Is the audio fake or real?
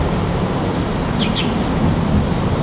fake